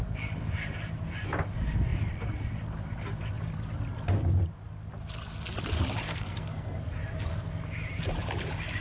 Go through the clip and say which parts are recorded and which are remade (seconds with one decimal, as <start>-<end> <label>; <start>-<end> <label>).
0.0-6.1 recorded; 6.1-6.8 remade; 6.8-8.8 recorded